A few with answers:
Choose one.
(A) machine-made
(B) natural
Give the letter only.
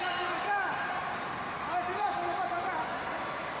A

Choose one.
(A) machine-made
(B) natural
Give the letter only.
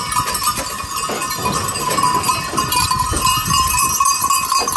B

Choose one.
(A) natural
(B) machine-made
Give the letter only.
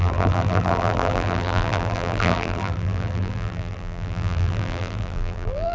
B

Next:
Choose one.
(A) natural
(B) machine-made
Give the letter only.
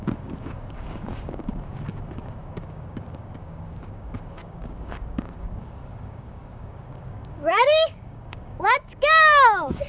B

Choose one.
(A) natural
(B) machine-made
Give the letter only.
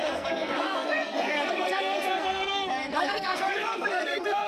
B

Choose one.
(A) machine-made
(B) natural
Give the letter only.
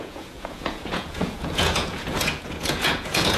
A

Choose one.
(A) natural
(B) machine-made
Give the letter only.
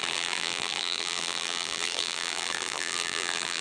B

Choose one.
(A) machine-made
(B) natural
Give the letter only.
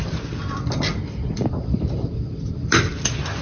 A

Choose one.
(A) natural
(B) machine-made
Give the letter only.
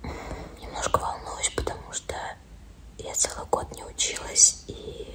A